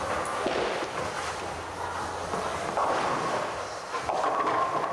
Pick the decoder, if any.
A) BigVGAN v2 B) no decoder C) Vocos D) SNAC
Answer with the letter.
B